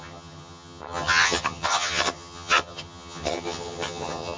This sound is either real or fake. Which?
fake